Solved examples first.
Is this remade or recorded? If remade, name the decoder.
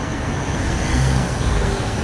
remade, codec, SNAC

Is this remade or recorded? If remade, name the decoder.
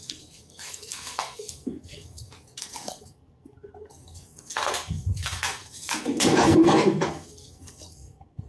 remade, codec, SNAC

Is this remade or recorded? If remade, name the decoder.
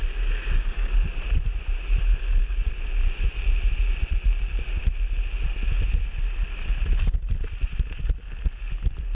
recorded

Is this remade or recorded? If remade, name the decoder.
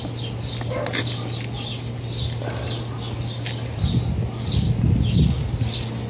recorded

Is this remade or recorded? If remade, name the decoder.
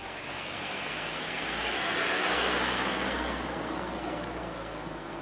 remade, codec, SNAC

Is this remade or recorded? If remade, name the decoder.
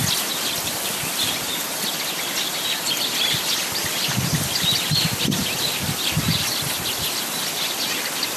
recorded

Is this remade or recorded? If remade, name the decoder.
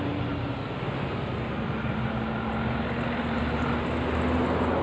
recorded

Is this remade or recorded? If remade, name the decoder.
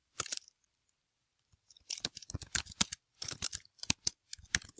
recorded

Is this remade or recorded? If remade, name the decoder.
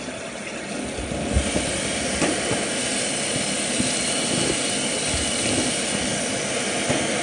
recorded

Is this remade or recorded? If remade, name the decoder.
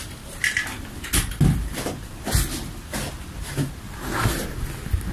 recorded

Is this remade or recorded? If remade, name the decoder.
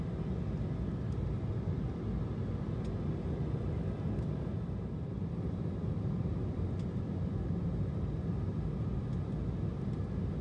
recorded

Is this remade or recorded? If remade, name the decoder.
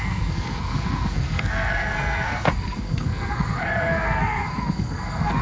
remade, codec, SNAC